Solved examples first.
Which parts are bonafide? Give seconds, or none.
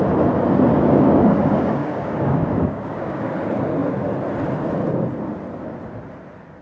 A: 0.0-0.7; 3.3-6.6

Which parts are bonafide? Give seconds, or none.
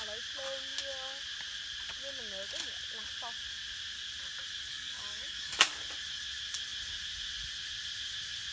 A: 0.0-4.7; 5.7-8.5